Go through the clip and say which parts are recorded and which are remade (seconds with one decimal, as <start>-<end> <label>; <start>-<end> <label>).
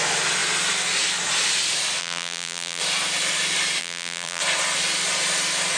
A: 0.0-2.0 recorded; 2.0-2.8 remade; 2.8-3.8 recorded; 3.8-4.4 remade; 4.4-5.8 recorded